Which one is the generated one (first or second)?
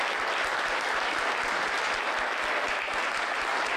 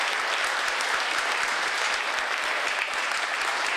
second